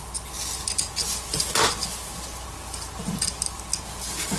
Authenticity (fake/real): real